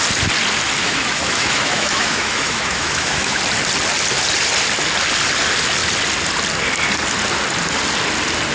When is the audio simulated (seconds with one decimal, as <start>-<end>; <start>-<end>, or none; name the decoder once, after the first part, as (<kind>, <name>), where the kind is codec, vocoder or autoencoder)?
0.8-3.4 (autoencoder, DAC-VAE)